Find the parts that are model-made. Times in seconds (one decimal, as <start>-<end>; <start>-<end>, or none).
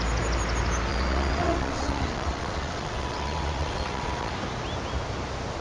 0.9-4.3